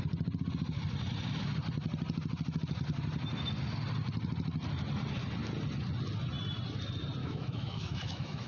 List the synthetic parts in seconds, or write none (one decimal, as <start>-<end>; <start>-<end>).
7.2-8.5